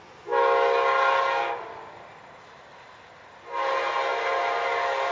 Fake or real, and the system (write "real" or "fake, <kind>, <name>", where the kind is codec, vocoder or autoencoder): real